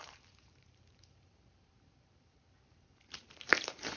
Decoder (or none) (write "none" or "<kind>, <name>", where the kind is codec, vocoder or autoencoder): vocoder, BigVGAN v2